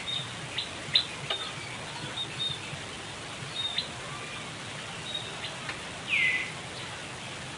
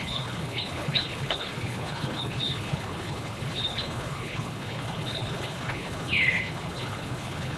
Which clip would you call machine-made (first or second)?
second